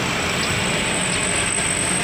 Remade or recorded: recorded